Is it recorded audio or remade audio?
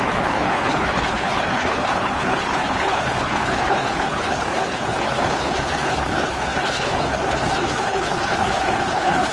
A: remade